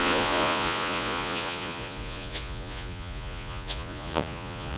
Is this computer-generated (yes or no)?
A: yes